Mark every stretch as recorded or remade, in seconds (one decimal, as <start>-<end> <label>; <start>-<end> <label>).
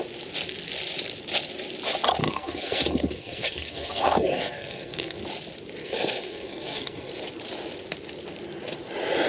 0.0-2.2 recorded; 2.2-5.2 remade; 5.2-5.8 recorded; 5.8-7.1 remade; 7.1-9.3 recorded